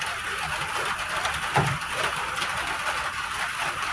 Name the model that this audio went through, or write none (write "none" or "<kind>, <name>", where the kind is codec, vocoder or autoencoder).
none